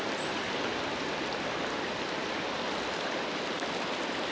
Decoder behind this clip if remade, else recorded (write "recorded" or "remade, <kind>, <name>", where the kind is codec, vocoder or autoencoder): recorded